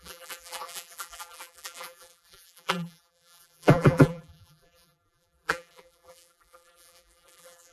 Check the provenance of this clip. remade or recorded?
remade